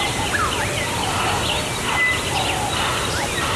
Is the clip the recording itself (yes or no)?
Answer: yes